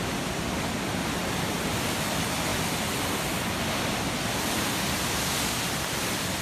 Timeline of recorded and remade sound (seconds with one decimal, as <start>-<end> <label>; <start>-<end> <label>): 0.0-6.4 recorded